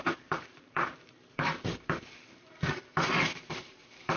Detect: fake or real fake